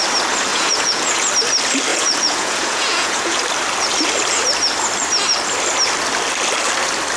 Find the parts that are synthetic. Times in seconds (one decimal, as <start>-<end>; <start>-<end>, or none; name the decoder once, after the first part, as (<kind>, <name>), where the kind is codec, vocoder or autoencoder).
0.5-1.3 (vocoder, Vocos); 1.9-3.4